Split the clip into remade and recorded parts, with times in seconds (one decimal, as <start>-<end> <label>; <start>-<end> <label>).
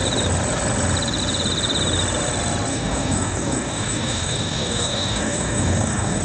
0.0-2.7 recorded; 2.7-6.2 remade